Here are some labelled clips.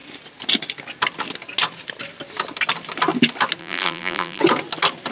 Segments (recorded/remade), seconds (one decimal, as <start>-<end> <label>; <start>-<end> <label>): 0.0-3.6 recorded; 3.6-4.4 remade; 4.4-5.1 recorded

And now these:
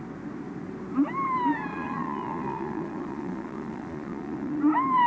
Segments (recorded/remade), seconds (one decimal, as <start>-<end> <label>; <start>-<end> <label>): 0.0-1.7 recorded; 1.7-4.6 remade; 4.6-5.1 recorded

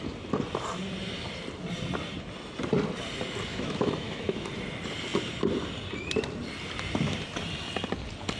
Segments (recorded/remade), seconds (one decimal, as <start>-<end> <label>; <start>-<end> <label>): 0.0-3.5 recorded; 3.5-4.5 remade; 4.5-8.4 recorded